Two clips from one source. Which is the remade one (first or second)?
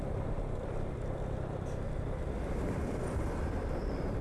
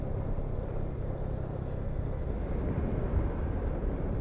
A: first